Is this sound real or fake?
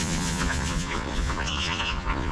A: fake